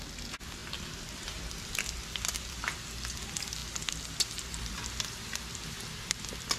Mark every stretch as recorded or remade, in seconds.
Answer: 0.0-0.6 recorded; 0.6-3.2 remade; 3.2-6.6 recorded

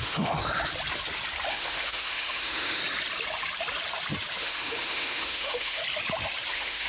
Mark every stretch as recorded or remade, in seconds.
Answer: 0.0-0.4 remade; 0.4-1.5 recorded; 1.5-2.8 remade; 2.8-4.4 recorded; 4.4-5.8 remade; 5.8-6.5 recorded; 6.5-6.9 remade

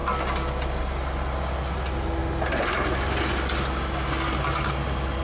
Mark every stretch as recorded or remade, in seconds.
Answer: 0.0-5.2 recorded

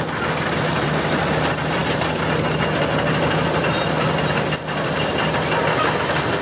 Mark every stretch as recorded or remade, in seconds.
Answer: 0.0-6.4 recorded

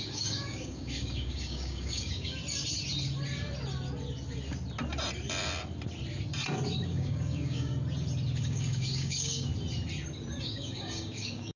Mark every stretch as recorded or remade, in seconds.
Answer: 0.0-2.4 remade; 2.4-6.9 recorded; 6.9-7.7 remade; 7.7-8.4 recorded; 8.4-9.5 remade; 9.5-10.4 recorded; 10.4-11.6 remade

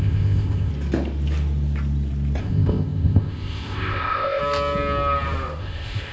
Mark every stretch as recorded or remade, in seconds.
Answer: 0.0-0.7 remade; 0.7-2.4 recorded; 2.4-4.4 remade; 4.4-5.6 recorded; 5.6-6.1 remade

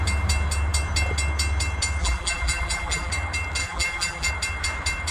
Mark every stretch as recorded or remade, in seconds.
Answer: 0.0-2.0 recorded; 2.0-3.1 remade; 3.1-3.6 recorded; 3.6-4.3 remade; 4.3-5.1 recorded